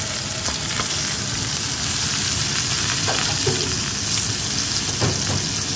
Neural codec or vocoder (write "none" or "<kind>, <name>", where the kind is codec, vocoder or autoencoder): none